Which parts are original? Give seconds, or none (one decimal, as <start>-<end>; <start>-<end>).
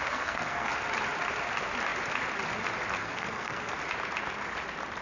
0.7-3.0; 3.7-5.0